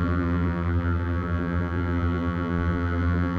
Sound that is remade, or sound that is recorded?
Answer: remade